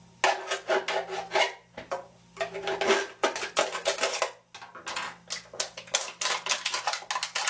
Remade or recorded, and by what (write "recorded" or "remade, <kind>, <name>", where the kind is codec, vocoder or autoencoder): recorded